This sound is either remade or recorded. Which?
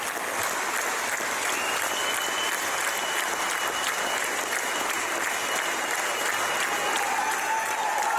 recorded